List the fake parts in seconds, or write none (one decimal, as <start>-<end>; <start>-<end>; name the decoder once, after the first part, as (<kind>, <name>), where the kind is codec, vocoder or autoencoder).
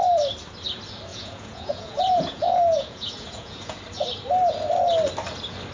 1.1-3.8 (vocoder, Vocos)